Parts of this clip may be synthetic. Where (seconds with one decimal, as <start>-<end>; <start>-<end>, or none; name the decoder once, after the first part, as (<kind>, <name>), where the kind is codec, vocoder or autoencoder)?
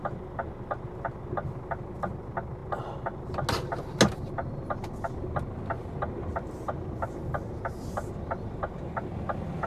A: none